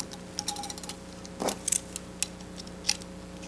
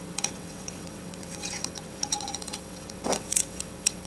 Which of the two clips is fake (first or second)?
second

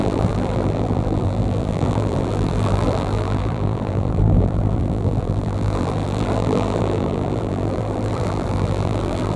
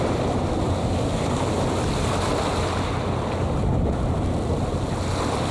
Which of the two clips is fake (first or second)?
first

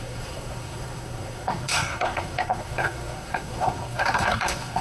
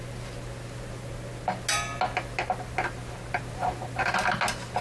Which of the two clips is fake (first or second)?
first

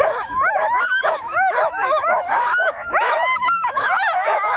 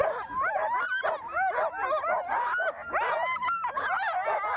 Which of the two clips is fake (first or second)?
first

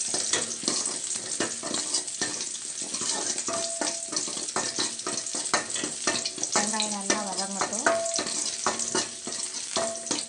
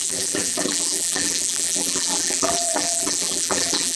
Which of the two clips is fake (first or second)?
second